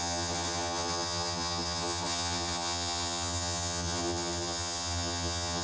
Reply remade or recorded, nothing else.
remade